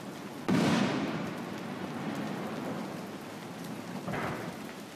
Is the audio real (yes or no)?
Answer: yes